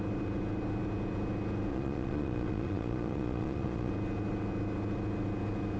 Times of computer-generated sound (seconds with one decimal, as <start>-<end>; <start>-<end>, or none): 1.7-3.9